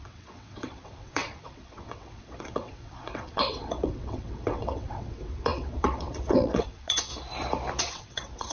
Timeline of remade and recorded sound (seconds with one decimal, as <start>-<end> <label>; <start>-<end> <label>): 0.0-7.1 remade; 7.1-7.8 recorded; 7.8-8.5 remade